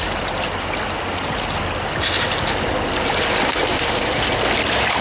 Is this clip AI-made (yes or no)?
no